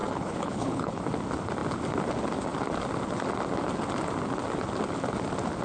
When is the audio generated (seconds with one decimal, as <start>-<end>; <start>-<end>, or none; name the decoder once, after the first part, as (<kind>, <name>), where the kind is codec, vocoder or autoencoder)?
0.0-1.0 (codec, HILCodec)